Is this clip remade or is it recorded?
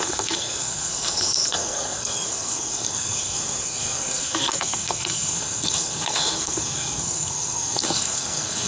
remade